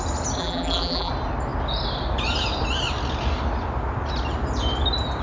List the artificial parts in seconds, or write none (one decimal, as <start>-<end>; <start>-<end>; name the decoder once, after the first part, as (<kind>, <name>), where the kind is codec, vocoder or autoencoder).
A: 0.4-1.1 (vocoder, BigVGAN v2)

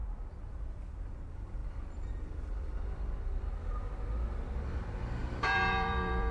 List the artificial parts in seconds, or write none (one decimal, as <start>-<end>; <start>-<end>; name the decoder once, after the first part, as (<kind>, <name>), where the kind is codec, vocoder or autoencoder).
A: 5.2-6.3 (vocoder, BigVGAN v2)

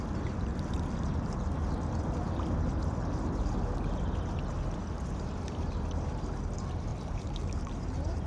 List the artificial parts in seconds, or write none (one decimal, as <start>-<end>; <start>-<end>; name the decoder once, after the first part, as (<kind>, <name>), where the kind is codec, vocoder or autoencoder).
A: 6.9-8.3 (vocoder, BigVGAN v2)